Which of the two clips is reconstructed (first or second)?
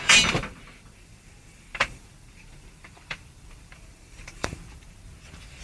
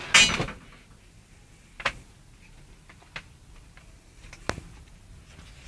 first